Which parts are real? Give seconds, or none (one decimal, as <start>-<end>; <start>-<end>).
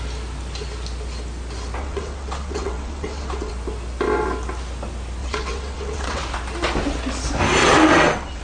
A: 0.0-1.8; 3.5-5.2; 6.2-7.6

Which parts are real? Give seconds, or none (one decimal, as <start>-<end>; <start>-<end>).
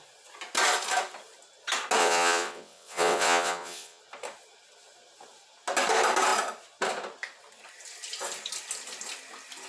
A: 0.0-2.0; 4.0-9.7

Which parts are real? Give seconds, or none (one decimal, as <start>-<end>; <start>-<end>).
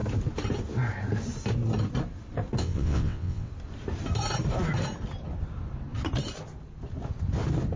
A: 0.0-2.6; 3.5-7.8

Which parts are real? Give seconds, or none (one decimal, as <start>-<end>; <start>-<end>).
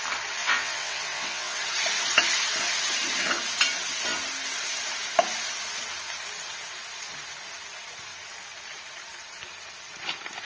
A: 0.0-0.4; 1.6-10.4